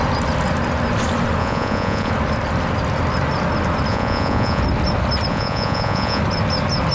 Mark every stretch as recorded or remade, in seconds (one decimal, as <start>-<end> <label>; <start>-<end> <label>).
0.0-1.4 recorded; 1.4-2.1 remade; 2.1-3.9 recorded; 3.9-4.6 remade; 4.6-5.3 recorded; 5.3-6.2 remade; 6.2-6.9 recorded